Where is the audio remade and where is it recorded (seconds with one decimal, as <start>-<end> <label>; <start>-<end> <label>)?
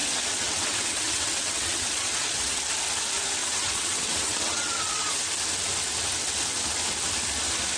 0.0-2.6 remade; 2.6-3.4 recorded; 3.4-5.1 remade; 5.1-7.8 recorded